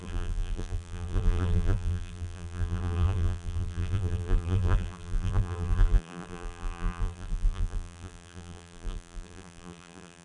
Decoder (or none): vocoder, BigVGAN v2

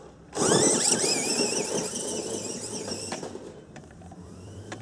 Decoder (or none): vocoder, BigVGAN v2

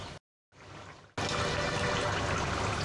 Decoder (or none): none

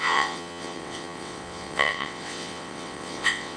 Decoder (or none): vocoder, WaveNeXt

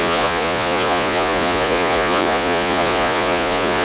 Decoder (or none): vocoder, Vocos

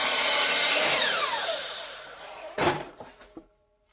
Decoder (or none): vocoder, BigVGAN v2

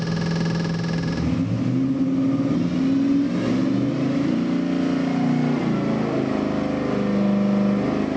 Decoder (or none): none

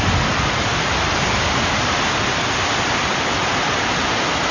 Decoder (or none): none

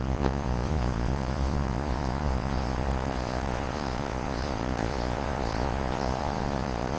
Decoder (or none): vocoder, Vocos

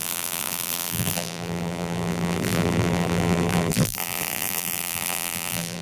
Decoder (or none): vocoder, BigVGAN v2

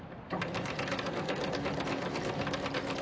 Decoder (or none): vocoder, BigVGAN v2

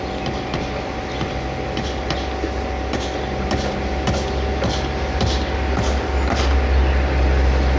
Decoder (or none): none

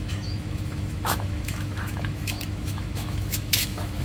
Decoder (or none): autoencoder, DAC-VAE